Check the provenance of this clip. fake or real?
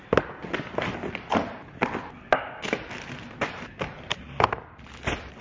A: real